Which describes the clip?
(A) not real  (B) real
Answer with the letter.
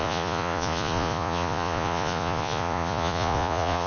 A